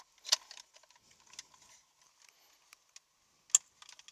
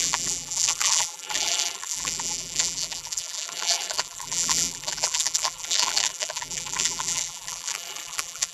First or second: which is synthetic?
second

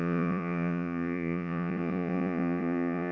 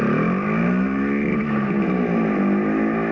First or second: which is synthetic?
first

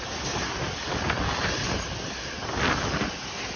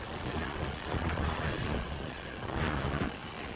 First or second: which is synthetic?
second